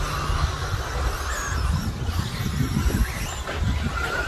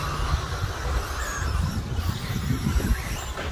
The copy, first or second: second